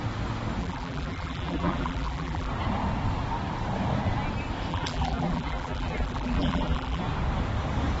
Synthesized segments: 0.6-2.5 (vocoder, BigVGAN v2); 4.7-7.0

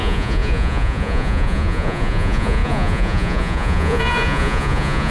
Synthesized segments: 0.0-5.1 (vocoder, Vocos)

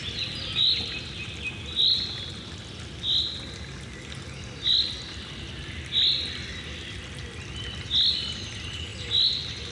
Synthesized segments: none